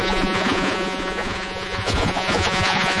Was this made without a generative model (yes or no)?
no